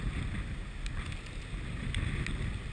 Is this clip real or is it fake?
real